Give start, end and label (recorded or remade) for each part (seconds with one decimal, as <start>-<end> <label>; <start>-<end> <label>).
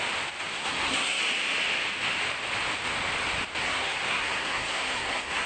0.0-0.5 recorded; 0.5-1.2 remade; 1.2-3.6 recorded; 3.6-5.5 remade